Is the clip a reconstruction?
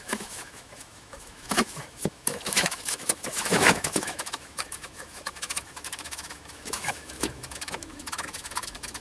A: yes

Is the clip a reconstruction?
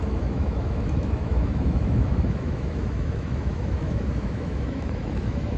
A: yes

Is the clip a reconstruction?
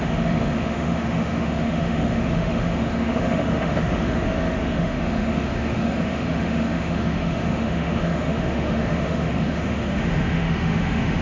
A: yes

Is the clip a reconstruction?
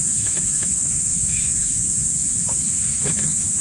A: yes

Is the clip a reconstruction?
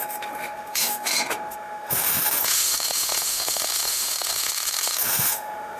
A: yes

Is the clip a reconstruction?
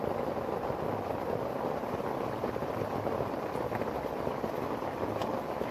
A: no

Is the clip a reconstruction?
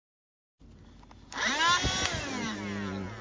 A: no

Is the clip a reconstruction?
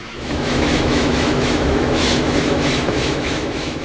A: yes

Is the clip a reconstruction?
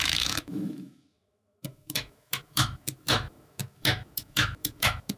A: yes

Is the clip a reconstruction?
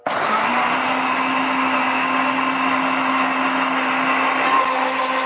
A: no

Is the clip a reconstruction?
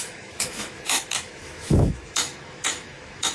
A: yes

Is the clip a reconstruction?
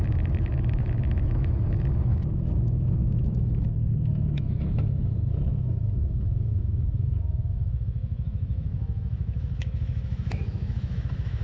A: yes